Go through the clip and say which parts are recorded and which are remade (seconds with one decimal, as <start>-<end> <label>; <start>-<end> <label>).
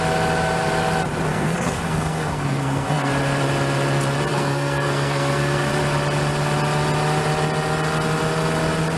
0.0-1.3 recorded; 1.3-3.1 remade; 3.1-4.3 recorded; 4.3-5.7 remade; 5.7-9.0 recorded